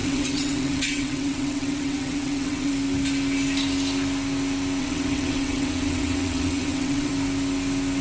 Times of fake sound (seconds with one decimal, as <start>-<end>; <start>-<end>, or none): 0.0-2.7; 4.8-7.1